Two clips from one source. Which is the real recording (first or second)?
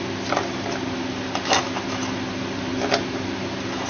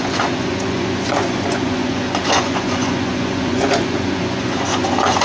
first